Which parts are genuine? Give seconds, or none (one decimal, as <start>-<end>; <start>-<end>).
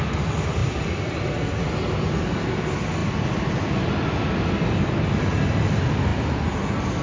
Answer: 0.0-0.6; 1.6-7.0